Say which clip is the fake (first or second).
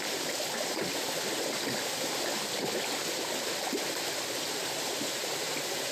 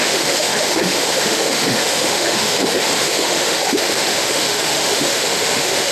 second